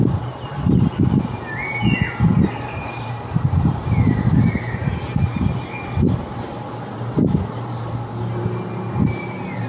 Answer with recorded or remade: recorded